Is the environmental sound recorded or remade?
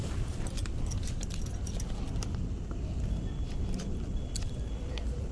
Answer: recorded